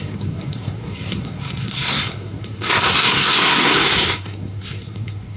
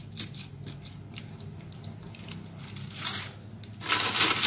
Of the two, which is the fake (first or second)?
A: first